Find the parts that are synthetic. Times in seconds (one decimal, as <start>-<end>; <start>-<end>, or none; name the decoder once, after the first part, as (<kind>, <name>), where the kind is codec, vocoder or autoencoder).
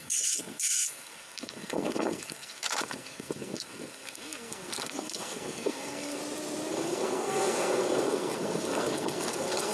0.0-6.2 (codec, SNAC); 6.7-9.7